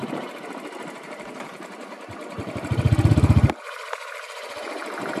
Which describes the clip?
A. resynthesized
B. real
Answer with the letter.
A